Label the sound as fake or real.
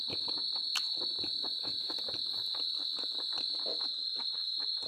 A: real